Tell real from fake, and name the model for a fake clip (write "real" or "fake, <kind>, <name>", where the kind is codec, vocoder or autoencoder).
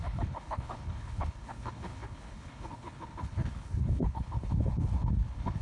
fake, codec, HILCodec